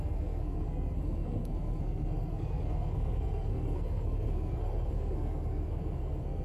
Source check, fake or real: fake